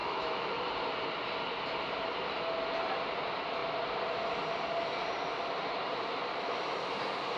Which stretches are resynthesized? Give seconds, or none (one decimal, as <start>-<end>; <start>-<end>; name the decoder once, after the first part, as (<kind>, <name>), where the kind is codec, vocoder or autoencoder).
0.0-0.5 (autoencoder, DAC-VAE); 6.3-6.8